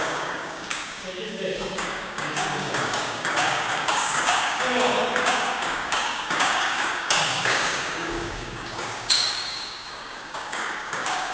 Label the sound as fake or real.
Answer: fake